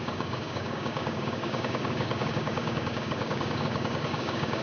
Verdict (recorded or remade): remade